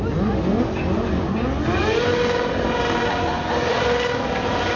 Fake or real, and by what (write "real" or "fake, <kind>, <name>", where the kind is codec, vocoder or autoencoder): real